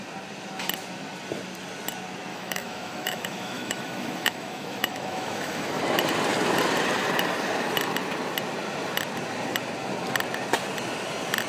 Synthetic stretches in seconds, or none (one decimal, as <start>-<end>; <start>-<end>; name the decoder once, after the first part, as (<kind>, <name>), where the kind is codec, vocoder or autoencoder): 2.3-5.8 (autoencoder, DAC-VAE)